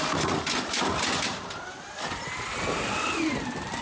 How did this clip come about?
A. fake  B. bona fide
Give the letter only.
B